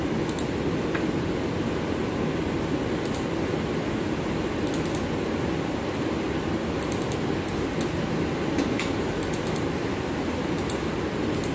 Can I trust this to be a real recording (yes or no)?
yes